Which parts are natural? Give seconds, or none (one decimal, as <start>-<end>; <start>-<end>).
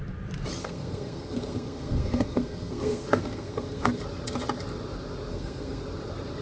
0.0-0.6; 4.0-5.3; 5.8-6.4